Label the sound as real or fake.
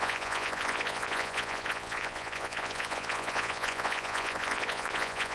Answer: fake